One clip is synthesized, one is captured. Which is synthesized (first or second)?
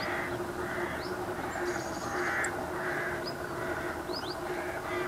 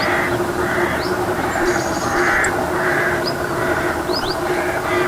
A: second